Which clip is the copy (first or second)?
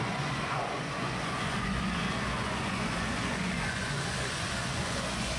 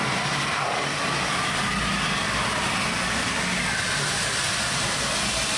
first